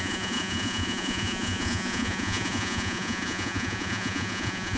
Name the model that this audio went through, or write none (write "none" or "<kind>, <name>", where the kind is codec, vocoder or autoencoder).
vocoder, Vocos